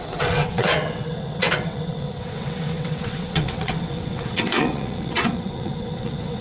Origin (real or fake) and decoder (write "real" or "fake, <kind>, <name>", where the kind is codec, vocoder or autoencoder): fake, vocoder, WaveNeXt